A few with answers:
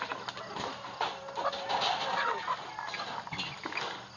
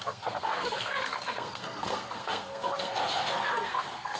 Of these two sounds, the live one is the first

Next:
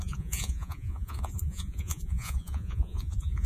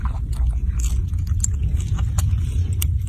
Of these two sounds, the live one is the second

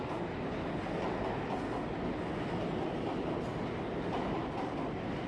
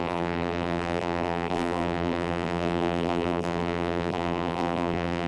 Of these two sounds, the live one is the first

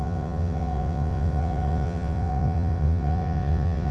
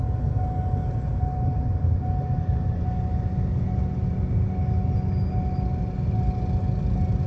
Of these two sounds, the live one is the second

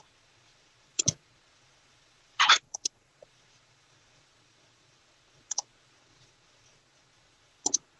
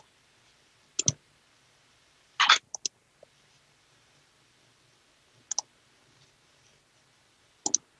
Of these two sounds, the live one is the second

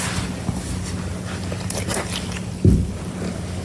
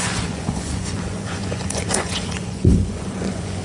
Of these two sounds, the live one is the first